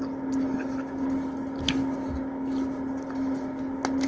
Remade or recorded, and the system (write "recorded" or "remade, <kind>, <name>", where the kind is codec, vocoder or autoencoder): recorded